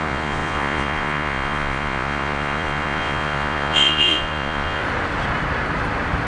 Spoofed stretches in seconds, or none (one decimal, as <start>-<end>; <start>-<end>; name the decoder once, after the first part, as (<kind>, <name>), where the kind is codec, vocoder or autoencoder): 0.0-4.8 (vocoder, Vocos)